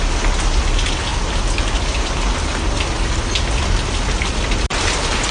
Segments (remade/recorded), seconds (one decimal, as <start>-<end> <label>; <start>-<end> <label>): 0.0-5.3 recorded